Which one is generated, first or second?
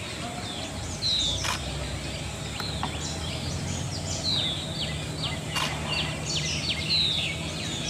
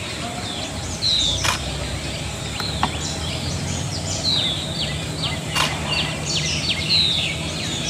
second